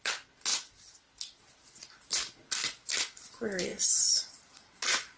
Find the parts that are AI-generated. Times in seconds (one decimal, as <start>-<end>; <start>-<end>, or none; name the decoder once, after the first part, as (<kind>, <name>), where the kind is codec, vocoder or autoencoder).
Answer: 3.7-4.8 (vocoder, Vocos)